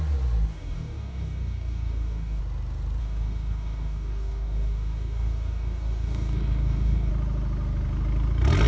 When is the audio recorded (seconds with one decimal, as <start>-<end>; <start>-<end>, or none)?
0.0-0.5; 2.4-3.0; 7.1-8.7